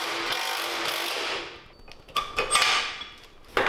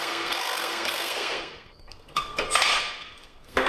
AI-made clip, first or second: second